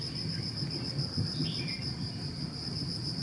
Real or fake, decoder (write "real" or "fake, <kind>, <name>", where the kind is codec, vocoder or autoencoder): real